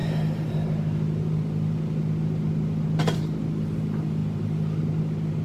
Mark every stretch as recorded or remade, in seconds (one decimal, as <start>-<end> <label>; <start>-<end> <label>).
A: 0.0-5.4 recorded